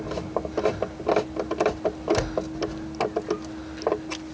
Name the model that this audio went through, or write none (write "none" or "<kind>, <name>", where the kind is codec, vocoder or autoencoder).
none